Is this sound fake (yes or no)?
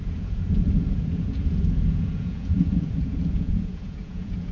yes